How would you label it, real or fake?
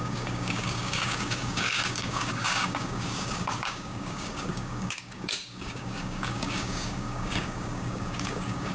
fake